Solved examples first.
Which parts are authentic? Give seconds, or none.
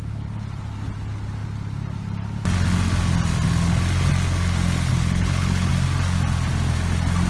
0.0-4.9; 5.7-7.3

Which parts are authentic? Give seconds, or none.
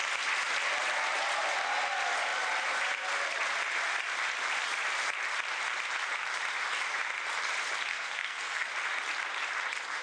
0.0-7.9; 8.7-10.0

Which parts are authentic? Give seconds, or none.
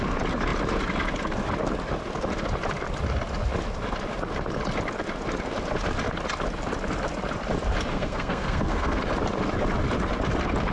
0.0-7.9; 9.0-10.7